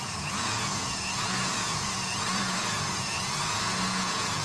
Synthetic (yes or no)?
yes